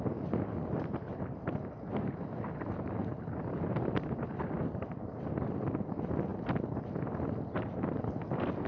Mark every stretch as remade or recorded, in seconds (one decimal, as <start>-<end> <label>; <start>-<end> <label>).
0.0-8.7 recorded